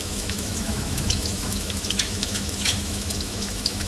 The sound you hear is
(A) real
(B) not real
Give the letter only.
B